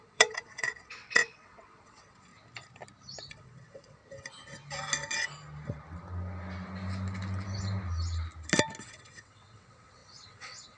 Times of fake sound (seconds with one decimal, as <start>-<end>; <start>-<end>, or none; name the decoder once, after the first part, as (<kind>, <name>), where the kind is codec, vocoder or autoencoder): 0.0-2.3 (vocoder, WaveNeXt); 3.3-4.0; 8.8-10.8